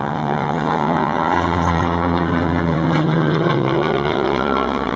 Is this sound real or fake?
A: fake